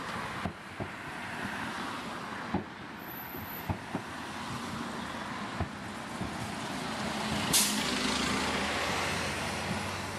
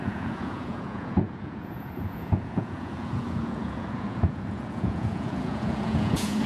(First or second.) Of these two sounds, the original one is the first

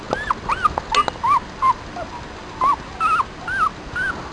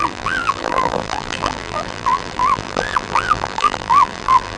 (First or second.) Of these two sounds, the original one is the first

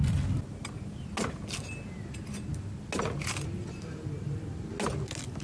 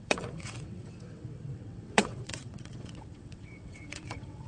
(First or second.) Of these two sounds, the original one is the first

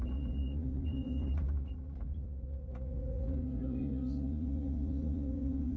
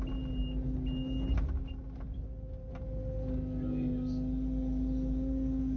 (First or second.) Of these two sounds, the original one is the second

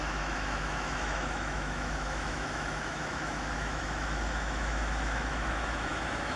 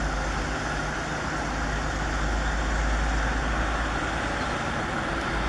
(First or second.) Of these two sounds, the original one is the second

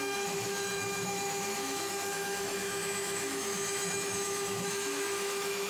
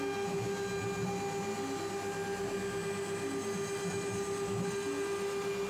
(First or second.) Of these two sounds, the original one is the second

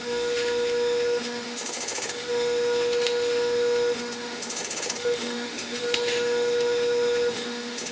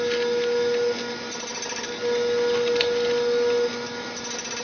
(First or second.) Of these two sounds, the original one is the second